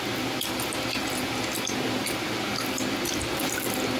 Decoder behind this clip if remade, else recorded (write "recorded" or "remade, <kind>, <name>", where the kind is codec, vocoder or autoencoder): recorded